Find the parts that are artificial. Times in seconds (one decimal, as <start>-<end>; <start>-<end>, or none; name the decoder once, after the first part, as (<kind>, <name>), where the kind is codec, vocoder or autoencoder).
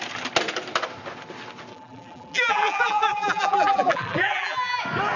1.7-4.8 (vocoder, BigVGAN v2)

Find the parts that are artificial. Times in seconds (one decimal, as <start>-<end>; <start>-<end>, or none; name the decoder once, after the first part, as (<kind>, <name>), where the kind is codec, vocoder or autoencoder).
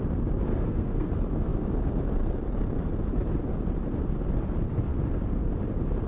0.5-1.1 (codec, SNAC)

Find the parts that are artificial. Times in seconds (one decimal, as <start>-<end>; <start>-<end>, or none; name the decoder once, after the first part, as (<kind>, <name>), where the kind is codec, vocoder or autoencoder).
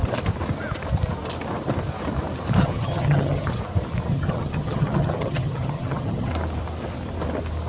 2.6-3.6 (vocoder, HiFi-GAN); 4.1-6.3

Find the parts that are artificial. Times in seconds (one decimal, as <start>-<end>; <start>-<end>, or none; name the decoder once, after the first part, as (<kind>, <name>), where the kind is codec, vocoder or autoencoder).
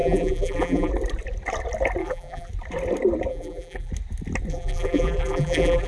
0.0-0.9 (vocoder, BigVGAN v2); 2.0-2.5; 3.3-3.9; 4.5-5.9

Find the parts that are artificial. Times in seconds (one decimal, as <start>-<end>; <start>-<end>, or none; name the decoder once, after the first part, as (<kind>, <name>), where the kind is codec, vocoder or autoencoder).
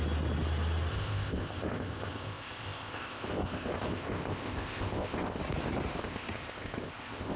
0.9-5.4 (codec, ZipCodec); 6.0-7.4